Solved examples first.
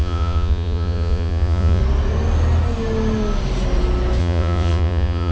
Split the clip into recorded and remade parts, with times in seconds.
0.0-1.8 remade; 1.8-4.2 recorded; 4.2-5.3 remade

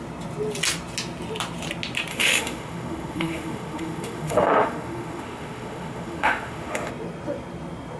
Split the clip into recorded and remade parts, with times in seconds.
0.0-2.1 recorded; 2.1-6.9 remade; 6.9-8.0 recorded

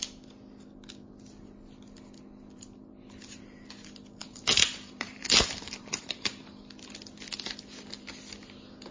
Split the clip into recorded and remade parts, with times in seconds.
0.0-4.2 recorded; 4.2-6.4 remade; 6.4-8.9 recorded

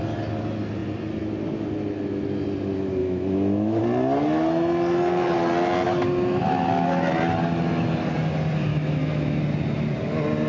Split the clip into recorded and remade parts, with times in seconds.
0.0-3.0 recorded; 3.0-3.8 remade; 3.8-8.7 recorded; 8.7-9.4 remade; 9.4-10.5 recorded

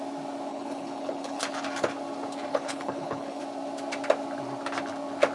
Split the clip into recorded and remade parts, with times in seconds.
0.0-0.5 recorded; 0.5-1.4 remade; 1.4-2.5 recorded; 2.5-3.4 remade; 3.4-5.3 recorded